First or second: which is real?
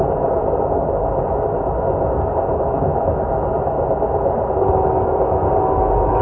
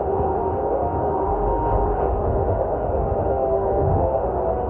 first